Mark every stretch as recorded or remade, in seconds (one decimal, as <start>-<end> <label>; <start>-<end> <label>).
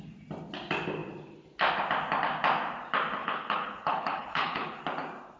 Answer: 0.0-3.2 recorded; 3.2-4.8 remade; 4.8-5.4 recorded